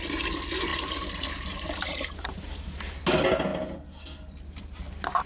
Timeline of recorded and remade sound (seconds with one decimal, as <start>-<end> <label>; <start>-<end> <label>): 0.0-0.7 recorded; 0.7-2.9 remade; 2.9-5.3 recorded